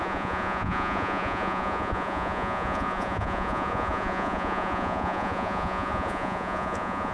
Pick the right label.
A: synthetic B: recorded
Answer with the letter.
A